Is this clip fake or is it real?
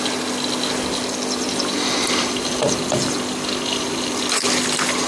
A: real